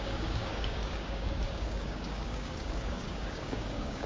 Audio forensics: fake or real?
fake